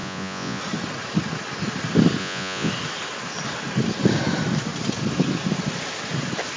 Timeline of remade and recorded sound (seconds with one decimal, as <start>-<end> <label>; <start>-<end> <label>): 0.0-0.6 remade; 0.6-2.2 recorded; 2.2-2.7 remade; 2.7-6.6 recorded